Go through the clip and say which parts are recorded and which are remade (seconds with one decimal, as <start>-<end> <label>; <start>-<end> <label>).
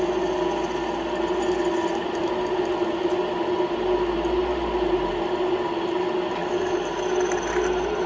0.0-8.1 recorded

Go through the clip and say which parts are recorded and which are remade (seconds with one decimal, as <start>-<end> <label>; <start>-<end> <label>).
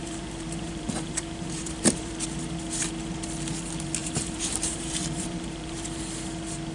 0.0-2.1 remade; 2.1-4.0 recorded; 4.0-6.0 remade; 6.0-6.7 recorded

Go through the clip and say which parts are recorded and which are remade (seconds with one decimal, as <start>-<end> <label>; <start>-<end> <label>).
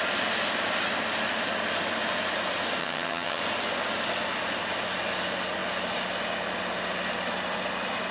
0.0-2.8 recorded; 2.8-3.4 remade; 3.4-8.1 recorded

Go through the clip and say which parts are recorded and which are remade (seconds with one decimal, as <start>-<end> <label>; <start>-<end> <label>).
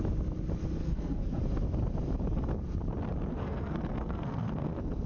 0.0-0.8 recorded; 0.8-1.4 remade; 1.4-3.3 recorded; 3.3-5.1 remade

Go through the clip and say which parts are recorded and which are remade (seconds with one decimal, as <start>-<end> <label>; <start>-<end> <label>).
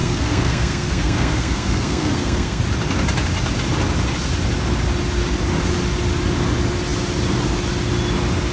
0.0-2.6 remade; 2.6-8.5 recorded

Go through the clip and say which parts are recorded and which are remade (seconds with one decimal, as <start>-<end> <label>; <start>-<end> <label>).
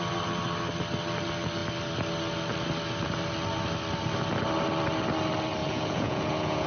0.0-5.6 recorded; 5.6-6.7 remade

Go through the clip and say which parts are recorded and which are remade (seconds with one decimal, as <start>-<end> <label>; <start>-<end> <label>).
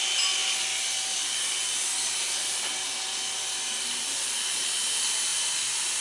0.0-6.0 recorded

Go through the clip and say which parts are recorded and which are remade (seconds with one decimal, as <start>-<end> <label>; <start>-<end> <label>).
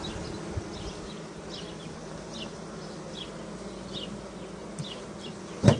0.0-5.8 recorded